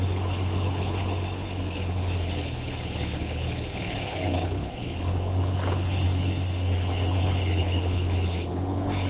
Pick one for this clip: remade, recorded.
remade